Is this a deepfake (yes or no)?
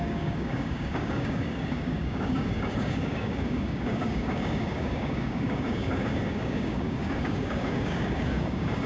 yes